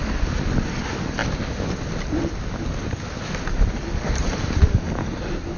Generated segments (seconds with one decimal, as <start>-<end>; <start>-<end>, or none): none